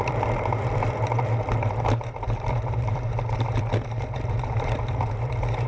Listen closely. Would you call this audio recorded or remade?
remade